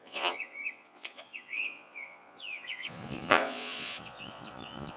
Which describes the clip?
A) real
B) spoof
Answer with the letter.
B